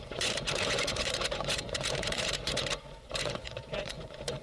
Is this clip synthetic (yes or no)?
yes